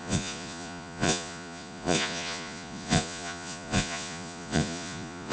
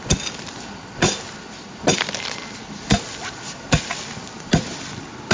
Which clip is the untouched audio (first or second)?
second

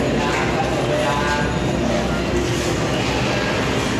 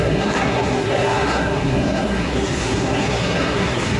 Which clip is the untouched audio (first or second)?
first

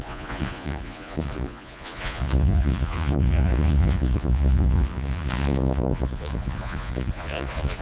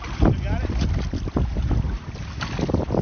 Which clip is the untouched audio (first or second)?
second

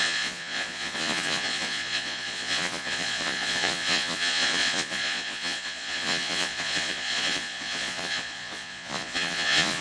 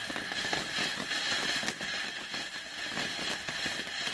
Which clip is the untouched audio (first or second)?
second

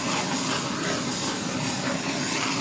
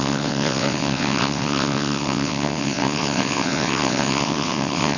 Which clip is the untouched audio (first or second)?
first